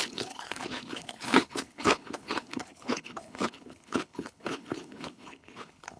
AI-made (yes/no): yes